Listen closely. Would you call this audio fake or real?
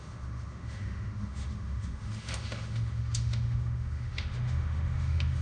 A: fake